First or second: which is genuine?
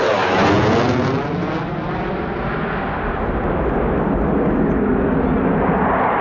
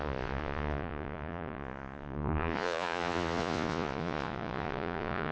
first